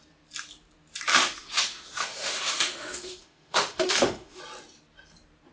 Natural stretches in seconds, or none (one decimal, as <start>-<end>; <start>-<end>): 0.0-1.1; 4.4-5.5